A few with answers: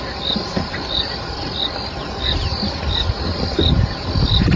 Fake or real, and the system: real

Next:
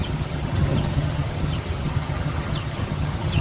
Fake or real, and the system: fake, vocoder, HiFi-GAN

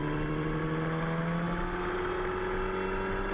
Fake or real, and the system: real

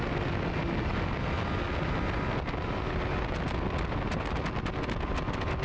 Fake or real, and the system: real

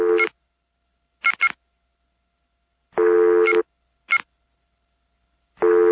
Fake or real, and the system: real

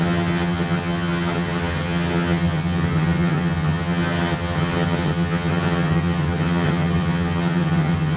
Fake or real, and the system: fake, vocoder, HiFi-GAN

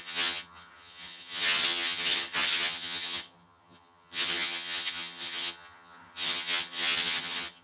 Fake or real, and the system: fake, vocoder, HiFi-GAN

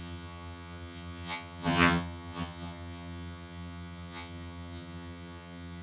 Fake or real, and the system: fake, vocoder, HiFi-GAN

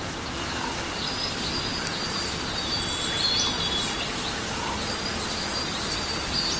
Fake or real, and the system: real